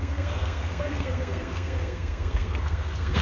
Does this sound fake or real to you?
fake